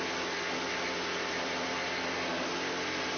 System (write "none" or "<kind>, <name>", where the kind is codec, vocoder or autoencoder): none